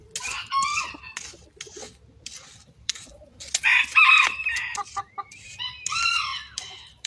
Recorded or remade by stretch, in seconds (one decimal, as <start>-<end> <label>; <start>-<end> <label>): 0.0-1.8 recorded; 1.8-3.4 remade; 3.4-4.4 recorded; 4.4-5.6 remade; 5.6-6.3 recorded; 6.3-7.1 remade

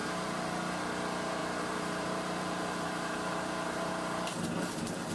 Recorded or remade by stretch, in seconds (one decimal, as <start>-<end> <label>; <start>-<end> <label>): 0.0-0.5 remade; 0.5-1.4 recorded; 1.4-3.9 remade; 3.9-5.1 recorded

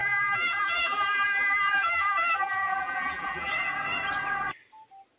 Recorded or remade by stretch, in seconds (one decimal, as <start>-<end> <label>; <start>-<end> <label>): 0.0-3.5 remade; 3.5-5.2 recorded

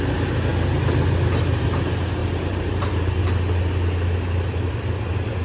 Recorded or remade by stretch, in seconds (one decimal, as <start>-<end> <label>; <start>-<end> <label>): 0.0-2.2 recorded; 2.2-3.2 remade; 3.2-5.4 recorded

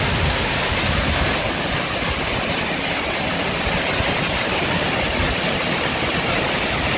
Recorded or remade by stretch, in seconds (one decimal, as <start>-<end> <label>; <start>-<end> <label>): 0.0-7.0 recorded

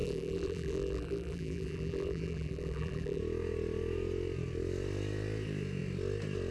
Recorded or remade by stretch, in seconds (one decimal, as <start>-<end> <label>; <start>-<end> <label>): 0.0-3.2 remade; 3.2-6.5 recorded